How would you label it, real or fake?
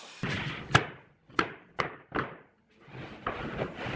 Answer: real